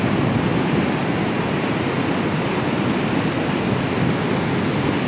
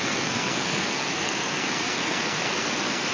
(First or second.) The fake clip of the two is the second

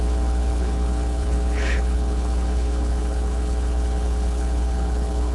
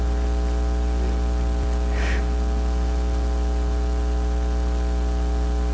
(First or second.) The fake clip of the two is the first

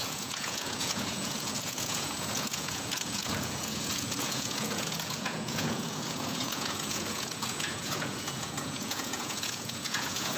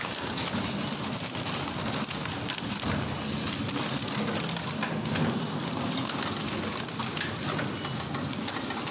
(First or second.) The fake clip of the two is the first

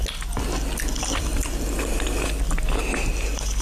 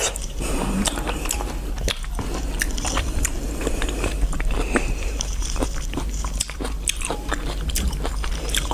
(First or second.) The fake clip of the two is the second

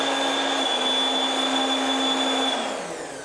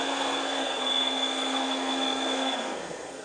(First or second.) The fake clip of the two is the second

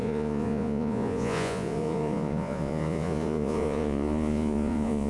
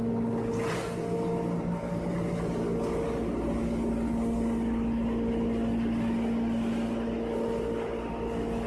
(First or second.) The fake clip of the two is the first